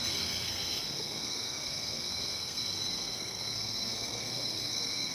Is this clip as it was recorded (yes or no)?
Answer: no